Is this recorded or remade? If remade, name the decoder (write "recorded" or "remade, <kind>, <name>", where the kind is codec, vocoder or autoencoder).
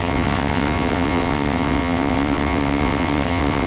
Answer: remade, vocoder, WaveNeXt